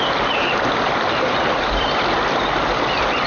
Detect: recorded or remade recorded